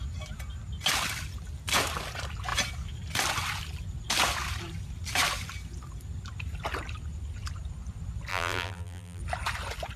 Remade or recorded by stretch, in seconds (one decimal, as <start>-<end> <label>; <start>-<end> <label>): 0.0-8.3 recorded; 8.3-9.2 remade; 9.2-10.0 recorded